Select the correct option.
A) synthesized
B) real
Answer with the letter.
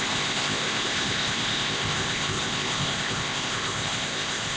A